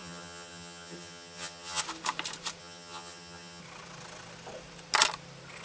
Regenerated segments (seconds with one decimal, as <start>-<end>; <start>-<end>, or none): 0.0-1.8; 2.6-3.6